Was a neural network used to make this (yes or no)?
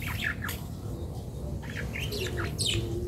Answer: no